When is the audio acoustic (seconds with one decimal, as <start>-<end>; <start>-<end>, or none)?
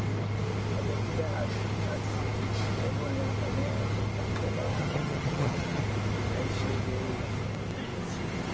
0.0-4.7; 5.8-8.5